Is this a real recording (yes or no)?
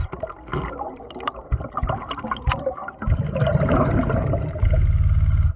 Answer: yes